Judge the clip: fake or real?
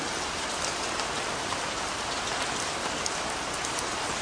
real